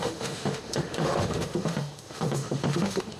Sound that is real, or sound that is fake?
fake